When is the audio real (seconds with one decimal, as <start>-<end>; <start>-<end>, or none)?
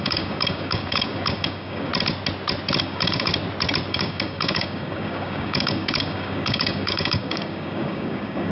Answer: 1.9-2.8; 3.3-3.9